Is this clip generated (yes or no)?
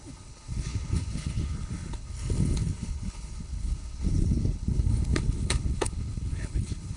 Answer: yes